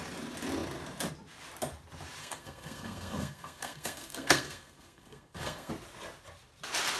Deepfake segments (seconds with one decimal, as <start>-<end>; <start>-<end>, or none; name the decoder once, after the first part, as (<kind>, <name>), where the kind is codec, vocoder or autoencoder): 2.2-5.7 (codec, SNAC)

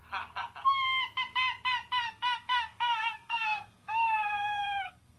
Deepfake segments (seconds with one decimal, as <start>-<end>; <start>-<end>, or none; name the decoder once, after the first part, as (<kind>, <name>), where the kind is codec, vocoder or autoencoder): 2.1-5.2 (codec, SNAC)